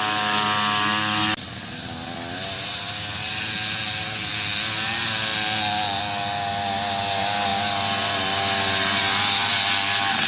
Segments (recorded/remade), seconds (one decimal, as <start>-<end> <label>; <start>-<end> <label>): 0.0-10.3 recorded

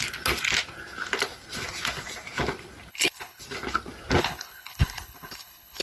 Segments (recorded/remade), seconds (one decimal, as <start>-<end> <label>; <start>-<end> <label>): 0.0-2.9 recorded; 2.9-3.4 remade; 3.4-4.2 recorded; 4.2-5.8 remade

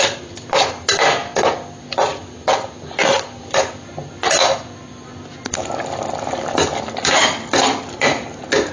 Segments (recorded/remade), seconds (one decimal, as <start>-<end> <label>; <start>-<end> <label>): 0.0-8.7 recorded

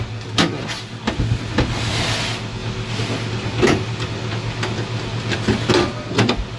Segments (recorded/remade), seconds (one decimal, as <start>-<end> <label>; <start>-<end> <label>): 0.0-6.6 recorded

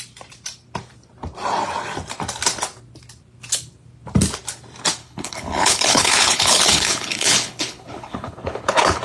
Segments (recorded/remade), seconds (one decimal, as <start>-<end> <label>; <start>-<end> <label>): 0.0-5.0 recorded; 5.0-9.0 remade